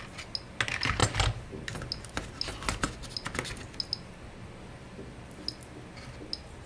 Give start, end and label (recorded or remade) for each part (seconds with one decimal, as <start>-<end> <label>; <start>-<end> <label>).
0.0-6.7 recorded